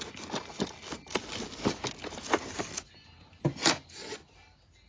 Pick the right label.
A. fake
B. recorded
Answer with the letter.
B